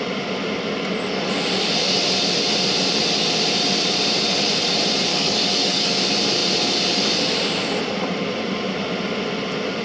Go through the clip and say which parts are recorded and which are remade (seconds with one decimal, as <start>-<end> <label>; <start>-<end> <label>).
0.0-5.1 recorded; 5.1-5.9 remade; 5.9-9.8 recorded